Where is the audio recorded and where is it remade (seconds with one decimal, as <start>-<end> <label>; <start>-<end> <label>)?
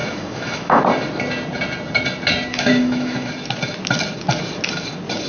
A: 0.0-0.8 remade; 0.8-2.5 recorded; 2.5-3.3 remade; 3.3-5.3 recorded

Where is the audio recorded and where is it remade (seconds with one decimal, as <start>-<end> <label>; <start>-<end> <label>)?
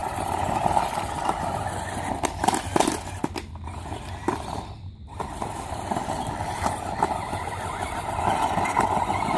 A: 0.0-9.4 recorded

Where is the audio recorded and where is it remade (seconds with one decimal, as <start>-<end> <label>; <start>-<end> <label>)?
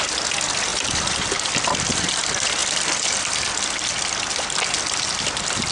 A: 0.0-5.7 recorded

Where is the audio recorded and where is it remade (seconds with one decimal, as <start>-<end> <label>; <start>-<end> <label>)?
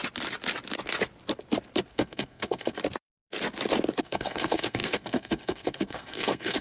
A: 0.0-1.9 recorded; 1.9-2.8 remade; 2.8-4.0 recorded; 4.0-6.6 remade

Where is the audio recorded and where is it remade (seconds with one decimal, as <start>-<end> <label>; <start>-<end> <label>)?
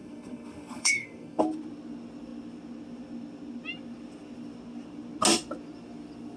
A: 0.0-1.4 remade; 1.4-6.4 recorded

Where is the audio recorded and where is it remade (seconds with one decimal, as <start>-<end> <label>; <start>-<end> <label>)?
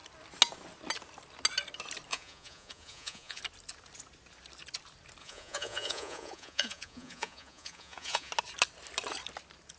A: 0.0-2.1 recorded; 2.1-3.4 remade; 3.4-5.2 recorded; 5.2-8.3 remade; 8.3-9.8 recorded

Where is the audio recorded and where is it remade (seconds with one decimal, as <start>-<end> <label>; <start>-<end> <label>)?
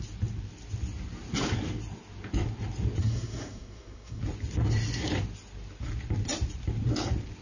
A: 0.0-3.0 recorded; 3.0-4.2 remade; 4.2-7.4 recorded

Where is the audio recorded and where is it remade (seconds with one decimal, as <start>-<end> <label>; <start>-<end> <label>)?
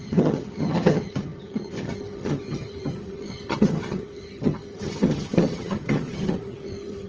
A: 0.0-7.1 remade